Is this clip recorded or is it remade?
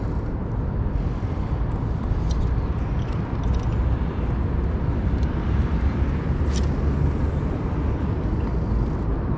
recorded